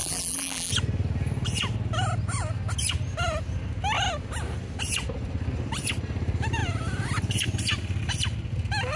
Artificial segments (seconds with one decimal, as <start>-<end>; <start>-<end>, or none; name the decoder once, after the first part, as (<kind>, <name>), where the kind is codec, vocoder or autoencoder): 0.0-0.7 (vocoder, BigVGAN v2)